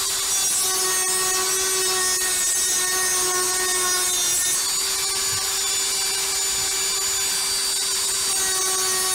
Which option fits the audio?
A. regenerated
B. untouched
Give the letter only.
B